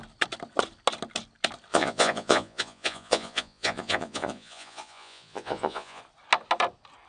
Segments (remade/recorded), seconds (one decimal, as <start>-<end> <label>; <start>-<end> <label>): 0.0-1.7 recorded; 1.7-6.0 remade; 6.0-7.1 recorded